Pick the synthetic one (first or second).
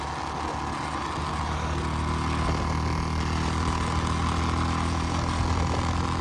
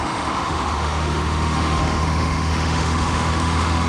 second